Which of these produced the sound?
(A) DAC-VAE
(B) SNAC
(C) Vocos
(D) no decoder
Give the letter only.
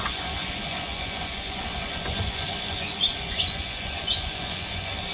C